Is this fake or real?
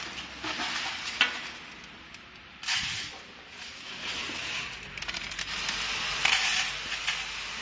real